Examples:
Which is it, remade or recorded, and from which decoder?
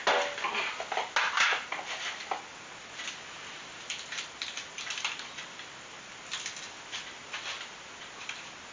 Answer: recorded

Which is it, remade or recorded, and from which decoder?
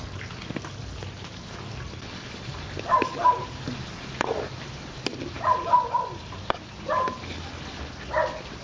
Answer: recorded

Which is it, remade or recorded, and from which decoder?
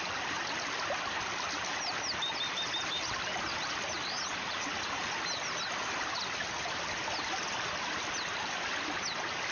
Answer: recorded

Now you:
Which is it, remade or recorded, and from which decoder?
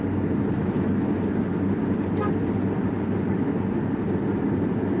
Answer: recorded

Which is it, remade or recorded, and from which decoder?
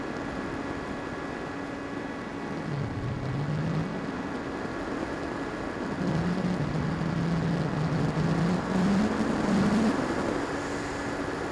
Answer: recorded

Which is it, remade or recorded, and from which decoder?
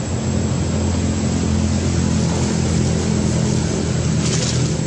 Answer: recorded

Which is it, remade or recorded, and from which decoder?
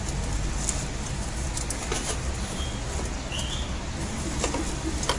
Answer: recorded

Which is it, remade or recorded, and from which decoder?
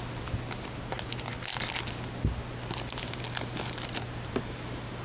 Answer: recorded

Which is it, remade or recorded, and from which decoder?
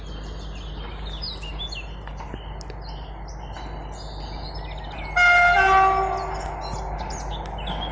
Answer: recorded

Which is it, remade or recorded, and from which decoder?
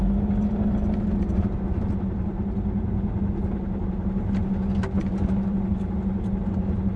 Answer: recorded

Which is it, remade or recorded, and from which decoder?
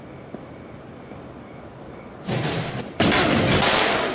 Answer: recorded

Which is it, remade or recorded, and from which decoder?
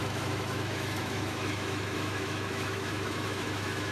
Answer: remade, autoencoder, DAC-VAE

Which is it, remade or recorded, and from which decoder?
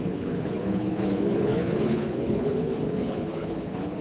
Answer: remade, codec, HILCodec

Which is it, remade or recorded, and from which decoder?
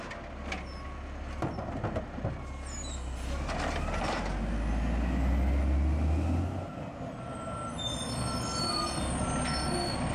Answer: recorded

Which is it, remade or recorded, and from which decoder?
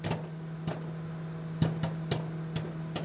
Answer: recorded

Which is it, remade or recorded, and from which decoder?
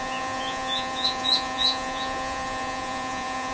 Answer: remade, vocoder, Vocos